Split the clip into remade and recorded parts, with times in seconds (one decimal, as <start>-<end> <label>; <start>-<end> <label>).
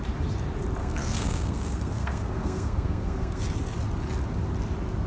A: 0.0-0.8 recorded; 0.8-3.4 remade; 3.4-5.1 recorded